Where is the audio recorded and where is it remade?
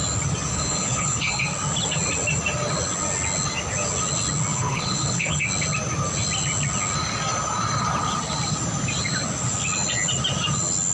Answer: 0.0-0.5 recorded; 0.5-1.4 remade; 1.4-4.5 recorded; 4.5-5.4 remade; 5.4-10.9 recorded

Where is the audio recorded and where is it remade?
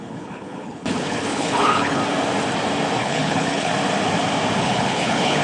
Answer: 0.0-2.0 remade; 2.0-3.0 recorded; 3.0-3.7 remade; 3.7-4.6 recorded; 4.6-5.4 remade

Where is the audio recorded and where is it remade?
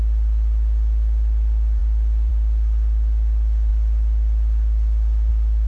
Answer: 0.0-5.7 recorded